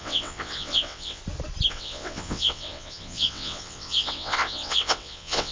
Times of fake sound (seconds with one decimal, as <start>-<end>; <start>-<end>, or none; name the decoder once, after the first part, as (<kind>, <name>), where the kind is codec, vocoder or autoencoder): 0.0-1.2 (vocoder, WaveNeXt); 1.7-5.5